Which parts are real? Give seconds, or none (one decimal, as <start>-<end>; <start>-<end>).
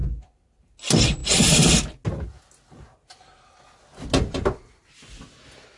0.0-5.8